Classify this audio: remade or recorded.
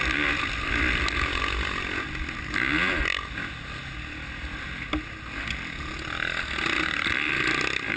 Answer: recorded